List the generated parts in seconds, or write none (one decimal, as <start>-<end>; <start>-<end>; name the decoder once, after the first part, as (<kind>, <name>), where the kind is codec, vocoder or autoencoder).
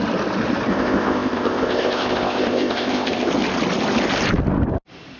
0.7-3.3 (codec, ZipCodec)